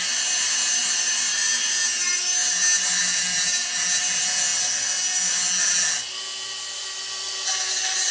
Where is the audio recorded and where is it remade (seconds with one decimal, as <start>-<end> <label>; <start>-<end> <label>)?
0.0-8.1 recorded